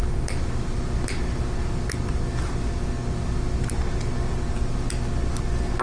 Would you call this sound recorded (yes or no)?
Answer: yes